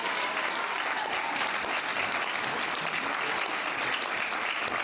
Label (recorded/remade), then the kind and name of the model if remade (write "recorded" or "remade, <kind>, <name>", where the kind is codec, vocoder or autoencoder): recorded